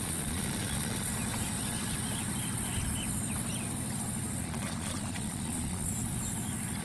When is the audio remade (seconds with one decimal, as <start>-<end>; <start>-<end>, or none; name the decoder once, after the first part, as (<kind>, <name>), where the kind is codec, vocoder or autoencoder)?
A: 0.0-1.1 (vocoder, Vocos); 4.4-5.9